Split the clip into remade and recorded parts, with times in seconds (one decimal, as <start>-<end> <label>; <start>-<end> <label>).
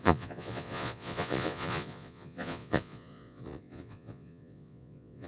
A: 0.0-5.3 remade